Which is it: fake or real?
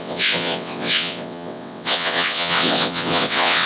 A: fake